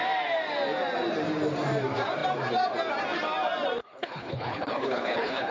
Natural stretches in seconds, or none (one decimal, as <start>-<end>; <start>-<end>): 0.0-3.8